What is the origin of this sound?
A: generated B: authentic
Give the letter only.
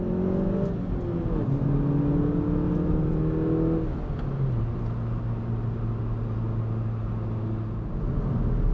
B